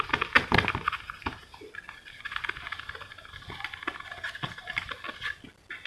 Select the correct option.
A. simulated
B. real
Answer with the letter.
B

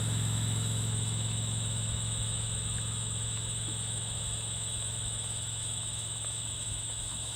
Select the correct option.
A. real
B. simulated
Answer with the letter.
B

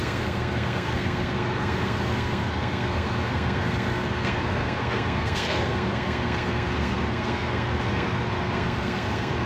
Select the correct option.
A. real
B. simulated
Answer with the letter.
B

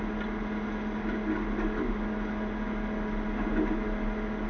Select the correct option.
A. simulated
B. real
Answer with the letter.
B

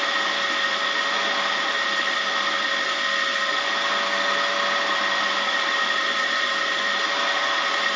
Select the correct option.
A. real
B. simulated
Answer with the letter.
A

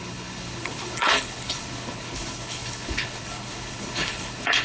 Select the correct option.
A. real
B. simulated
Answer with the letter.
B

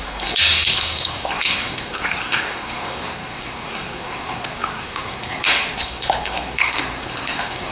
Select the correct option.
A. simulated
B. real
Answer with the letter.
A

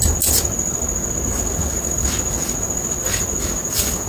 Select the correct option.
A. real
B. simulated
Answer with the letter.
A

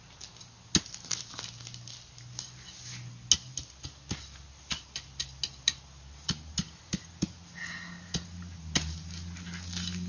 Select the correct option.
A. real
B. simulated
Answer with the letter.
A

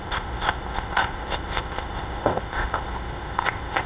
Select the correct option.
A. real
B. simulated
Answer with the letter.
B